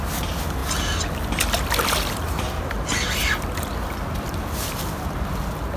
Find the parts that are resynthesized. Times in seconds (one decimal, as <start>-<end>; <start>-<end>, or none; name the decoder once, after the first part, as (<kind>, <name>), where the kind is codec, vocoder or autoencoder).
none